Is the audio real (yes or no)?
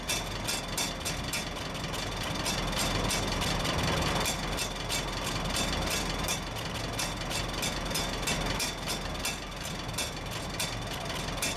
yes